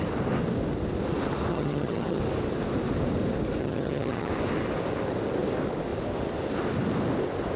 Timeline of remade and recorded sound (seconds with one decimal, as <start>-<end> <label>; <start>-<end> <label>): 0.0-1.5 recorded; 1.5-2.2 remade; 2.2-3.6 recorded; 3.6-4.3 remade; 4.3-7.6 recorded